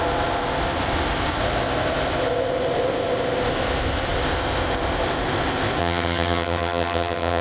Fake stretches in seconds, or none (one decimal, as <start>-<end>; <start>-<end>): 5.8-7.4